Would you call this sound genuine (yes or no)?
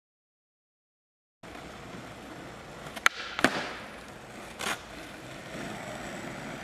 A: yes